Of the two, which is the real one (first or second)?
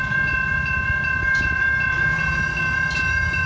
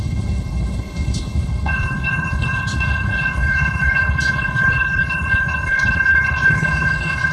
first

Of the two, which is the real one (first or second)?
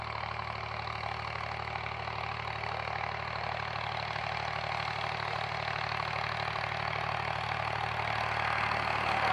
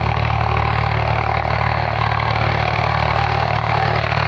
first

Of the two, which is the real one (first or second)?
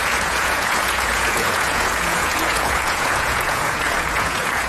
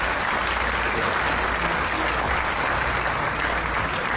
second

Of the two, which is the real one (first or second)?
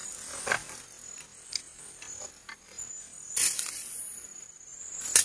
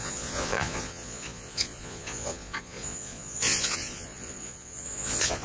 first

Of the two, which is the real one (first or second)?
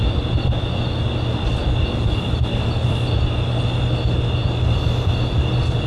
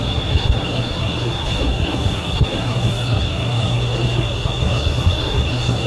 first